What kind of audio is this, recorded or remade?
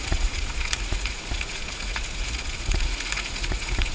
remade